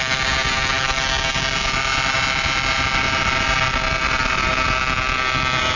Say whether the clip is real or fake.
real